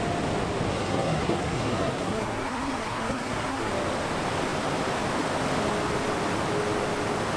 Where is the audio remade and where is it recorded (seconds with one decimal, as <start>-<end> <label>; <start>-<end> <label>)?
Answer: 0.0-0.7 recorded; 0.7-3.7 remade; 3.7-7.4 recorded